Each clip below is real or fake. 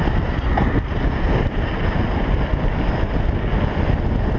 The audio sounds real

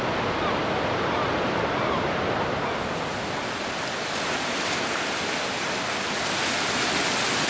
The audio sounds real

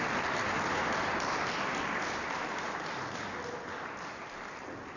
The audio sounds real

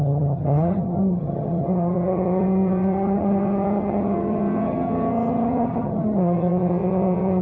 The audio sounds fake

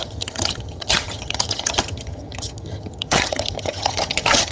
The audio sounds fake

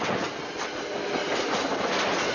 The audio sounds real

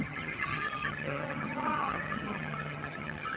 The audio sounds fake